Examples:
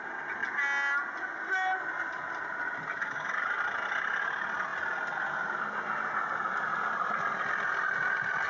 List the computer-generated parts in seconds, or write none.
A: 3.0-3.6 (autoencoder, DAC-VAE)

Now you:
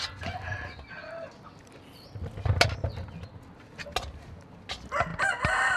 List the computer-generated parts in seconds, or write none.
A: none

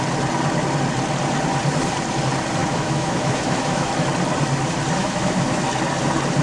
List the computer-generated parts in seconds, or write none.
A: 2.6-3.9 (autoencoder, DAC-VAE); 5.0-5.6